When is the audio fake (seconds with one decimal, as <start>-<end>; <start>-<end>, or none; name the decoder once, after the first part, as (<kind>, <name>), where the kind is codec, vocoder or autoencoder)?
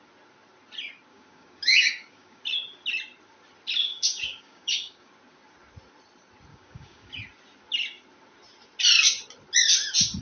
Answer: 1.1-2.4 (codec, DAC); 3.9-5.1; 6.5-7.1